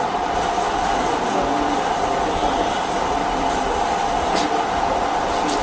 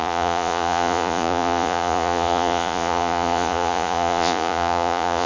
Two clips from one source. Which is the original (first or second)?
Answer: first